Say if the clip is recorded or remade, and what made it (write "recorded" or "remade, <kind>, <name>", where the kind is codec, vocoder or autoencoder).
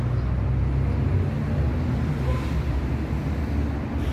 recorded